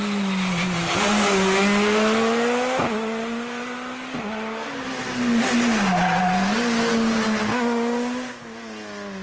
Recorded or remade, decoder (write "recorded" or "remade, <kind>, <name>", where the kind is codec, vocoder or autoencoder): recorded